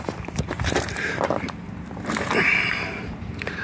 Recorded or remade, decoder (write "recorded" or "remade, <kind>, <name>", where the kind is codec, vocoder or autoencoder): remade, vocoder, BigVGAN v2